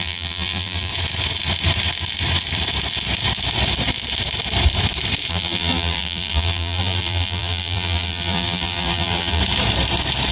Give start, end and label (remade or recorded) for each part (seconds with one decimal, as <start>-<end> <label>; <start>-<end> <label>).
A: 0.0-0.9 remade; 0.9-5.3 recorded; 5.3-9.4 remade; 9.4-10.3 recorded